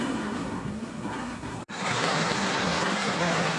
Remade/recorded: remade